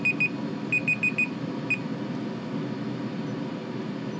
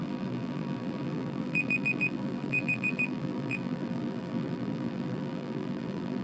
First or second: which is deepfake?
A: second